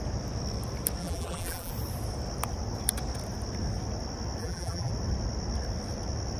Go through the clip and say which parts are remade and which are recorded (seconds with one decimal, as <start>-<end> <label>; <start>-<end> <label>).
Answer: 0.0-1.0 recorded; 1.0-1.7 remade; 1.7-4.4 recorded; 4.4-4.9 remade; 4.9-6.4 recorded